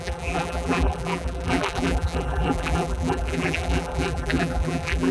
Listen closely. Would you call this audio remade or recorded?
remade